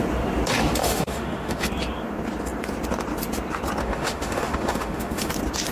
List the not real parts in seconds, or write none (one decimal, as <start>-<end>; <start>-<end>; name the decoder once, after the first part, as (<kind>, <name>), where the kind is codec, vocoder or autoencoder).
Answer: 0.8-1.7 (autoencoder, DAC-VAE); 3.8-5.3